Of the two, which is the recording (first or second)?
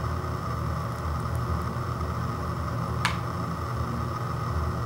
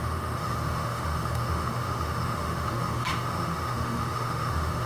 first